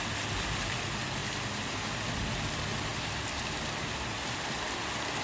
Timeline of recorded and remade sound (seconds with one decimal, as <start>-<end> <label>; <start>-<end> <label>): 0.0-5.2 recorded